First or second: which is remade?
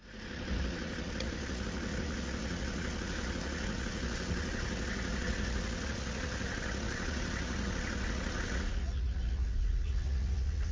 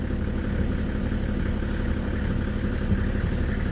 first